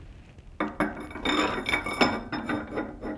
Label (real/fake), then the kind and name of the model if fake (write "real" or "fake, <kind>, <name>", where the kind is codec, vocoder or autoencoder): real